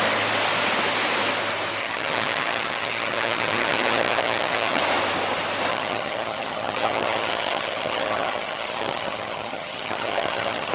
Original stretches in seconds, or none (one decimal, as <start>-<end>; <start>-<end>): 0.0-1.8; 4.8-5.7